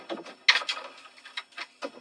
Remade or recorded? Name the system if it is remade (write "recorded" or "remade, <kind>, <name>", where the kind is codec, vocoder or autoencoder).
recorded